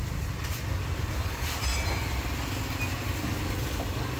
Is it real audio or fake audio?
real